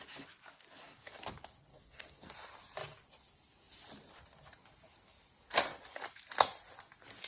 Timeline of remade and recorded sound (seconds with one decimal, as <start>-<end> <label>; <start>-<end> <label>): 0.0-1.7 recorded; 1.7-2.3 remade; 2.3-7.3 recorded